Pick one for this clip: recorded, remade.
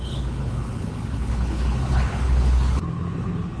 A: remade